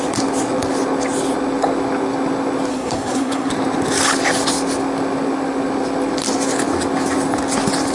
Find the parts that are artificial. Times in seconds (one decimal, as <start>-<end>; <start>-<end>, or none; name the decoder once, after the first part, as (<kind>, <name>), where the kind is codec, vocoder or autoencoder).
2.7-3.5 (codec, SNAC)

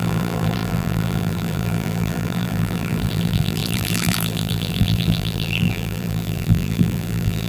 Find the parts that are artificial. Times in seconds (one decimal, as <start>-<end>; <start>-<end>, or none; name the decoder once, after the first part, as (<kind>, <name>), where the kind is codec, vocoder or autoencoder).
0.0-7.5 (vocoder, BigVGAN v2)

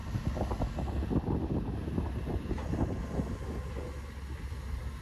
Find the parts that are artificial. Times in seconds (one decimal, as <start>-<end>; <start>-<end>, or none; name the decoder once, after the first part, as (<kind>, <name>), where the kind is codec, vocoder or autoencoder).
none

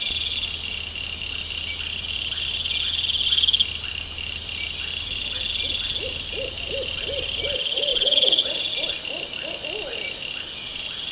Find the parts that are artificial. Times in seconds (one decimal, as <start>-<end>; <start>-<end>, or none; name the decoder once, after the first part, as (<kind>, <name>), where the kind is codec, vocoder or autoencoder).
7.9-8.7 (vocoder, Vocos)

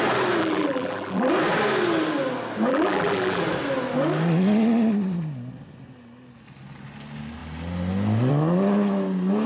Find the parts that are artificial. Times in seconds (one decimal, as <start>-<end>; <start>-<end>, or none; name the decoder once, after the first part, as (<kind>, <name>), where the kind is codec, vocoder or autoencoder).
0.4-1.3 (vocoder, BigVGAN v2); 2.7-3.4

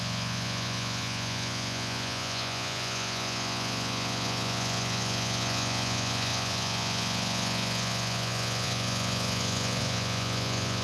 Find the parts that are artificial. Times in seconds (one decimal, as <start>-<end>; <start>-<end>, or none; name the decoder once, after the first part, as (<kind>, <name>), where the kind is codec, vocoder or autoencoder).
0.0-10.8 (vocoder, Vocos)

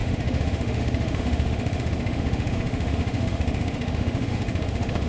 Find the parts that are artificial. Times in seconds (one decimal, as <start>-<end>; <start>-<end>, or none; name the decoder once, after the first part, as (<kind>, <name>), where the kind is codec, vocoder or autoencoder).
0.0-5.1 (autoencoder, DAC-VAE)

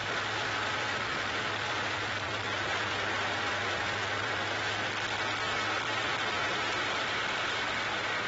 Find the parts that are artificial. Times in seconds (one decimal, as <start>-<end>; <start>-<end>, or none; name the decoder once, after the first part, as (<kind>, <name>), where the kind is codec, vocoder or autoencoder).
0.0-4.9 (vocoder, BigVGAN v2)